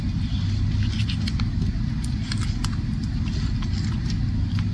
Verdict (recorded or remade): recorded